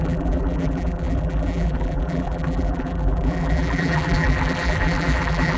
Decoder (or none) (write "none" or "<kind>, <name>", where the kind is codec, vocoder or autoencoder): vocoder, BigVGAN v2